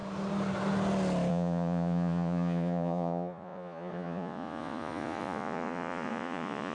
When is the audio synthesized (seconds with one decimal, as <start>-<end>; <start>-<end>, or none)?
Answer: 1.3-6.7